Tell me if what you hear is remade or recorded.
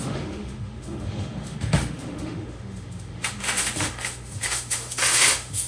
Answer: remade